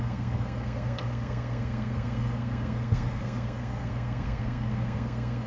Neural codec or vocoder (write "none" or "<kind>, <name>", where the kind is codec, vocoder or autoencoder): codec, SNAC